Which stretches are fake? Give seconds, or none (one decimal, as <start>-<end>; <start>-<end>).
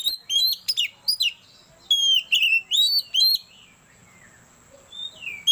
none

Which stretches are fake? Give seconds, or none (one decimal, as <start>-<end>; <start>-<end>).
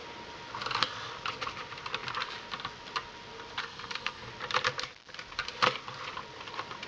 3.6-4.3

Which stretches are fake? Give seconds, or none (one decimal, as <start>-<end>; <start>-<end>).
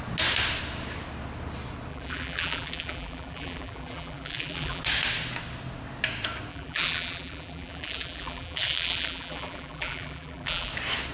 1.9-4.8; 6.5-10.7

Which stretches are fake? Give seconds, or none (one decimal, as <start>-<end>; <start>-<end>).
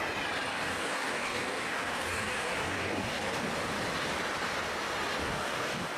0.5-3.5; 5.2-6.0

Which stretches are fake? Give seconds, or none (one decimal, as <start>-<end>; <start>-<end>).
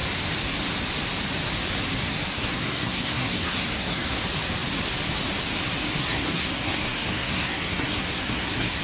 2.3-4.2; 6.0-8.8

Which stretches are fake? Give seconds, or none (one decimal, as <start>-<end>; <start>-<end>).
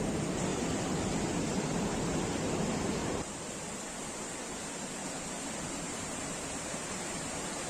0.5-1.1; 3.0-3.9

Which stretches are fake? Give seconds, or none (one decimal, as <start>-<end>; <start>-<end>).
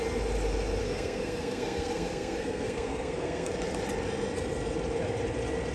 0.8-3.5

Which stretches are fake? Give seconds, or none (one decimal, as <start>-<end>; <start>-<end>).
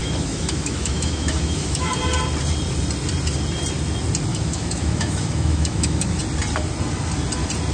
0.0-1.9; 4.3-6.2